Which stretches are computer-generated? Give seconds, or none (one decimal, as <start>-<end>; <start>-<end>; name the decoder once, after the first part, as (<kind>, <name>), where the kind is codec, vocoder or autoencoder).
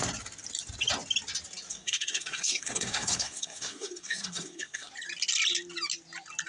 1.7-4.9 (codec, SNAC)